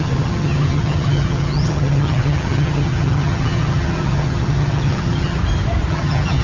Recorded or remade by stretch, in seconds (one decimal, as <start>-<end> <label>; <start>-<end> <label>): 0.0-5.4 remade; 5.4-5.9 recorded; 5.9-6.4 remade